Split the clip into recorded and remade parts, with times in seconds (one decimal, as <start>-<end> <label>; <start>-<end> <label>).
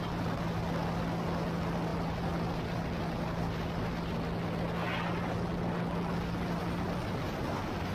0.0-7.9 recorded